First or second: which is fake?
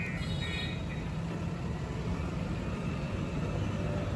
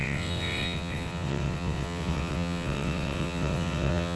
second